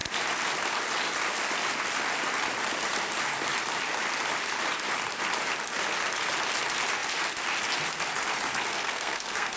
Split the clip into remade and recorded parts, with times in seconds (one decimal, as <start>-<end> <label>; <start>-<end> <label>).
0.0-8.7 recorded; 8.7-9.6 remade